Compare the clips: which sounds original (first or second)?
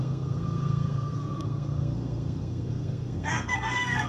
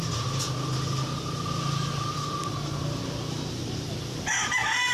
second